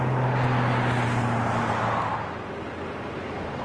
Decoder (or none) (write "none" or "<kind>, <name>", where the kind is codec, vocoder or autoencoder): none